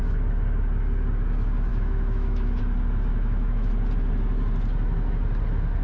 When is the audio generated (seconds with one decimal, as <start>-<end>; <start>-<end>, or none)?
1.7-2.6; 3.1-3.7